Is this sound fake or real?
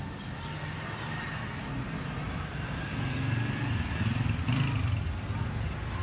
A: real